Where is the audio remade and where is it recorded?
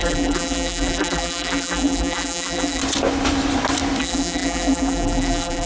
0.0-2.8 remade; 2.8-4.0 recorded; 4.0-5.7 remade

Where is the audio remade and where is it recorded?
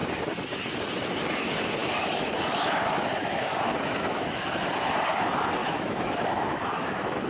0.0-1.8 recorded; 1.8-2.7 remade; 2.7-3.2 recorded; 3.2-4.4 remade; 4.4-5.6 recorded; 5.6-7.3 remade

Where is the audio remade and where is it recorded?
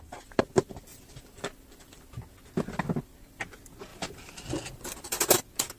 0.0-0.9 recorded; 0.9-2.0 remade; 2.0-3.9 recorded; 3.9-5.2 remade; 5.2-5.8 recorded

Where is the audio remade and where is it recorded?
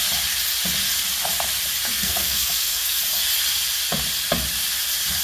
0.0-1.9 recorded; 1.9-3.0 remade; 3.0-5.2 recorded